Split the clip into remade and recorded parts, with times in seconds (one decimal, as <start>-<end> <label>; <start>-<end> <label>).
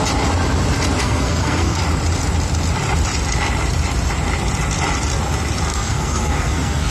0.0-1.0 recorded; 1.0-1.8 remade; 1.8-5.7 recorded; 5.7-6.9 remade